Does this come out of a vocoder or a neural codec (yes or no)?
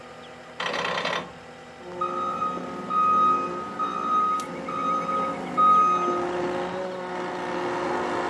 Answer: no